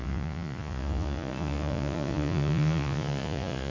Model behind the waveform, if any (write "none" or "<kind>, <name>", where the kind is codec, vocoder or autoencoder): vocoder, Vocos